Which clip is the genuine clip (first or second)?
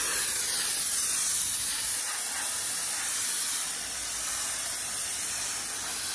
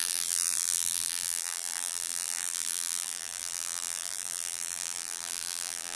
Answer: first